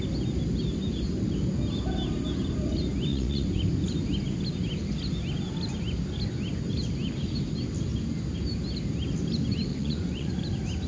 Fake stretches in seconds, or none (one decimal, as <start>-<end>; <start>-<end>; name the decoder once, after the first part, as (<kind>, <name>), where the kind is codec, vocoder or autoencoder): 3.1-3.7 (vocoder, Vocos); 9.7-10.3